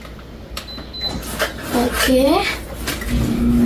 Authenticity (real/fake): real